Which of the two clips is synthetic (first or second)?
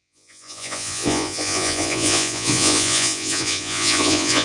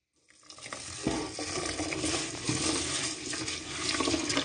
first